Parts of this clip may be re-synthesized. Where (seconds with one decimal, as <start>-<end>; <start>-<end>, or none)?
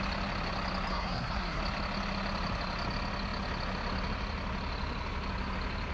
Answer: 0.9-1.6